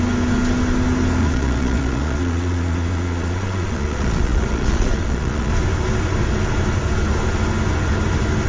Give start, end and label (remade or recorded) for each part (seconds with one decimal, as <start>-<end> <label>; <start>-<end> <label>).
0.0-1.2 recorded; 1.2-5.5 remade; 5.5-8.5 recorded